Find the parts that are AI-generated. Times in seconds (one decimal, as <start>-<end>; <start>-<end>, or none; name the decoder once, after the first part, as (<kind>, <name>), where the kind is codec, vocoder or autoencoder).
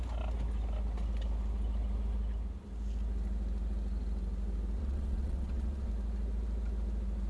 4.8-5.9 (vocoder, WaveNeXt)